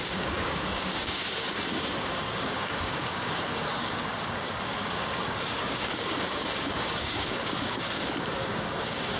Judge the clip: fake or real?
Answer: fake